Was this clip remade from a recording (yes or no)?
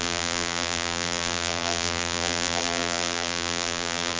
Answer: yes